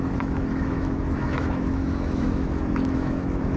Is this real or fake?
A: fake